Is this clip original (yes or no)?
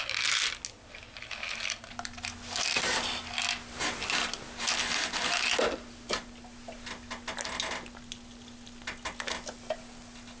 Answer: yes